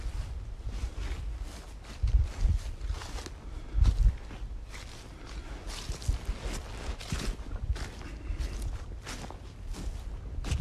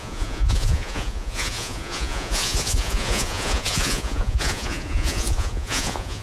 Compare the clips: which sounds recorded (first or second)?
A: first